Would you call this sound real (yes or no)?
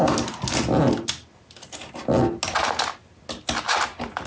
yes